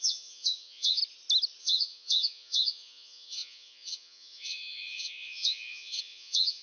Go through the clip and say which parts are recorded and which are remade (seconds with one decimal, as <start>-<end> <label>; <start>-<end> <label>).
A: 0.0-1.0 remade; 1.0-1.6 recorded; 1.6-6.6 remade